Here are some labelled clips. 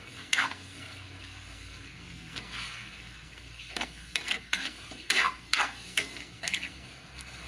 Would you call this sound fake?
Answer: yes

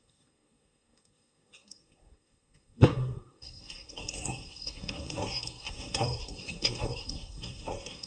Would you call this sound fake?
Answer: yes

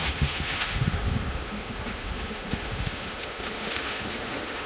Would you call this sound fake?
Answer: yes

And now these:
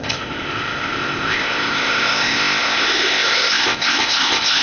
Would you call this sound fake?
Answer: yes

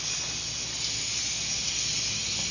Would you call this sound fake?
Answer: no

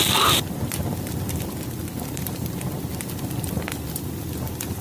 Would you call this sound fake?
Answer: yes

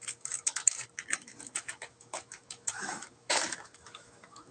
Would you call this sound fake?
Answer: yes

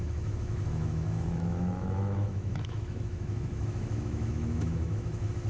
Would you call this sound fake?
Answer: yes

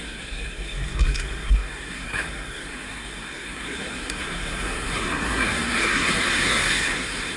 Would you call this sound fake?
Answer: yes